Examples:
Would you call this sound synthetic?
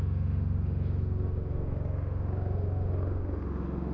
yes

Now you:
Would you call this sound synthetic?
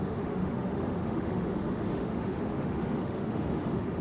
yes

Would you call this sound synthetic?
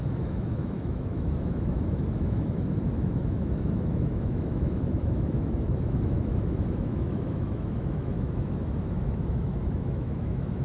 yes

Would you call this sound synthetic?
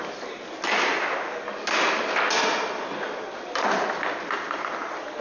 no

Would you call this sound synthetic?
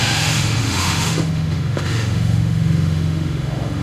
yes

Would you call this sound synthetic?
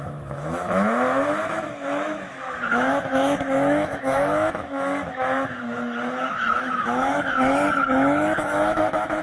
yes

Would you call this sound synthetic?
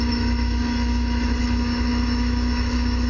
yes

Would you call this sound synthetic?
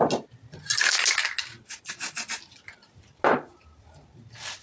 no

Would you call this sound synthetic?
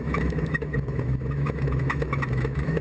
yes